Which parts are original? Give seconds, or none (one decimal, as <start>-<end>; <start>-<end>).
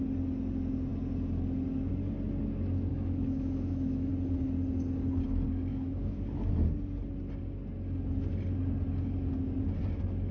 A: 0.0-2.9; 4.1-5.7; 6.5-10.3